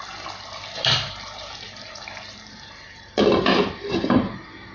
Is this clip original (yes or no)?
no